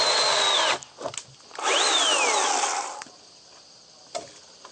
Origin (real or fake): real